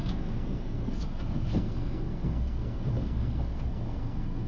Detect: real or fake fake